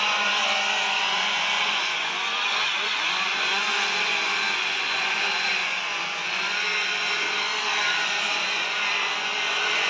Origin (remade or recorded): remade